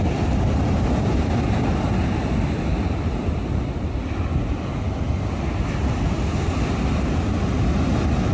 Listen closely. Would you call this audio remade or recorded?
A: recorded